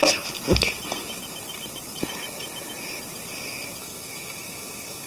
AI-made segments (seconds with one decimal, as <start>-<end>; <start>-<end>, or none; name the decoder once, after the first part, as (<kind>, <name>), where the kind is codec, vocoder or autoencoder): 3.8-5.1 (autoencoder, DAC-VAE)